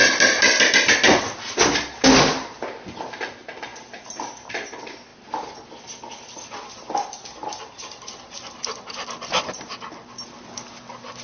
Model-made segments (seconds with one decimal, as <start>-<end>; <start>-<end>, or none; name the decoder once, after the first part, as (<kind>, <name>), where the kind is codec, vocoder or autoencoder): none